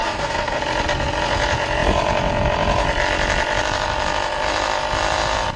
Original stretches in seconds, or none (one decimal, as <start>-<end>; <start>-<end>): 0.6-5.6